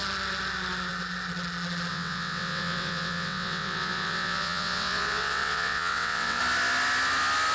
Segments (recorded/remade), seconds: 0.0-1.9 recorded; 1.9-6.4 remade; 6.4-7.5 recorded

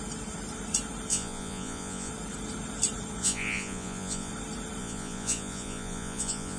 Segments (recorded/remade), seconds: 0.0-1.1 recorded; 1.1-2.1 remade; 2.1-3.2 recorded; 3.2-4.3 remade; 4.3-4.8 recorded; 4.8-6.6 remade

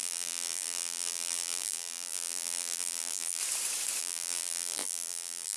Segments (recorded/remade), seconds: 0.0-3.4 remade; 3.4-4.0 recorded; 4.0-5.6 remade

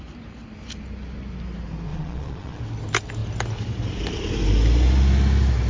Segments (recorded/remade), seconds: 0.0-1.9 recorded; 1.9-2.6 remade; 2.6-5.7 recorded

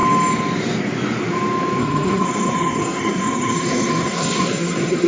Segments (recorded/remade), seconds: 0.0-1.8 recorded; 1.8-5.1 remade

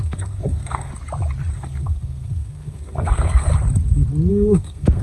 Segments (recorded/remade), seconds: 0.0-0.9 remade; 0.9-1.5 recorded; 1.5-3.5 remade; 3.5-4.3 recorded; 4.3-5.0 remade

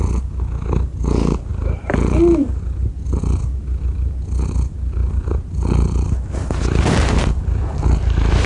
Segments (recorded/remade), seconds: 0.0-1.5 recorded; 1.5-2.8 remade; 2.8-5.0 recorded; 5.0-8.5 remade